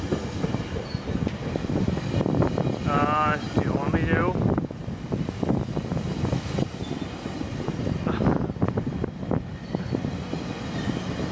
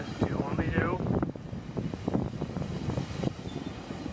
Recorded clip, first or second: first